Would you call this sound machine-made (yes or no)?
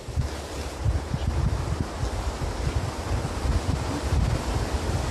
no